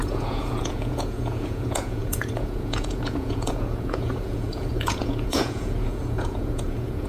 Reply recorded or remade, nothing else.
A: remade